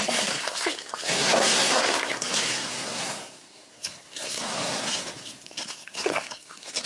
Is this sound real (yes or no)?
no